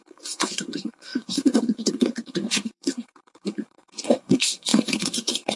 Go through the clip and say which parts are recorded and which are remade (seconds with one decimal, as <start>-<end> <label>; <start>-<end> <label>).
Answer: 0.0-5.6 remade